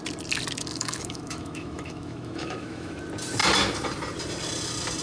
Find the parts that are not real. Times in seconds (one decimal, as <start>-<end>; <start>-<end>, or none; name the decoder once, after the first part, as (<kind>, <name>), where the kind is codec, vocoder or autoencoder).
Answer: 0.7-3.0 (autoencoder, DAC-VAE)

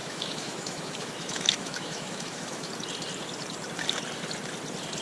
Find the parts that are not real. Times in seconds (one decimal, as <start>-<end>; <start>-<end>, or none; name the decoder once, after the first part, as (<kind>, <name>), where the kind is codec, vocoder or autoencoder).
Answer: 0.0-2.7 (autoencoder, DAC-VAE)

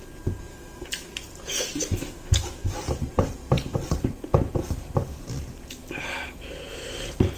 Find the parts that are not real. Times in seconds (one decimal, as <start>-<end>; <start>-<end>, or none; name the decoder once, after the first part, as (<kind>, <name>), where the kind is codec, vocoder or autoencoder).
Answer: 0.5-1.1 (autoencoder, DAC-VAE); 1.7-2.8

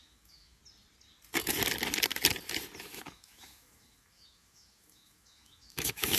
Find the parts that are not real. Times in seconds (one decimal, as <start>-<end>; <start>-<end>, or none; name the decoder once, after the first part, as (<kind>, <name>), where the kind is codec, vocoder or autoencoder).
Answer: 0.0-0.6 (autoencoder, DAC-VAE); 2.8-6.2